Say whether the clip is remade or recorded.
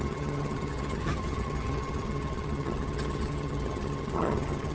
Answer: remade